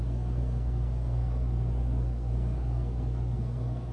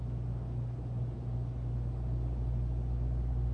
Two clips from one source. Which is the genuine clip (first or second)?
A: second